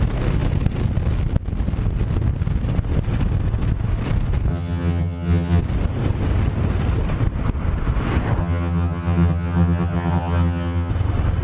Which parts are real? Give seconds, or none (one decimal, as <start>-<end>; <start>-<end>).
0.0-4.5; 5.6-8.4; 10.9-11.4